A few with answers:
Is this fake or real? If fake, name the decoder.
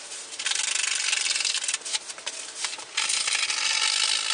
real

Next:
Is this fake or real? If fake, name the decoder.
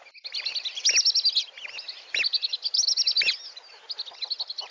real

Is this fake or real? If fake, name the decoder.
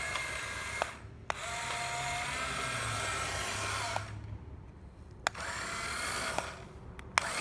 real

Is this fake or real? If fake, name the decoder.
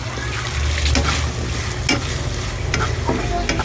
real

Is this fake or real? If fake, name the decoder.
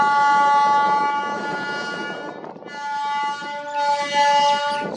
real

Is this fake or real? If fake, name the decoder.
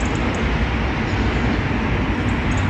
real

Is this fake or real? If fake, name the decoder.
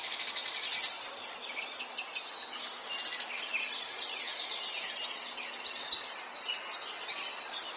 real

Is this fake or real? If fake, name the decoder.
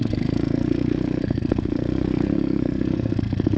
fake, codec, SNAC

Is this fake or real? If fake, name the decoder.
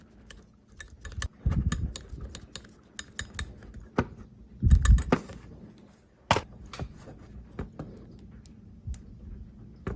real